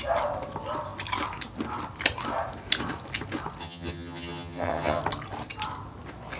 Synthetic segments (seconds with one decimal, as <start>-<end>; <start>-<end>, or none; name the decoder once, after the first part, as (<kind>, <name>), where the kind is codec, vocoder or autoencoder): 3.6-5.0 (vocoder, HiFi-GAN)